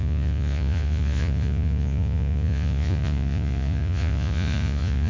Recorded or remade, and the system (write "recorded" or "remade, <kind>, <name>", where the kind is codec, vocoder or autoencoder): remade, vocoder, Vocos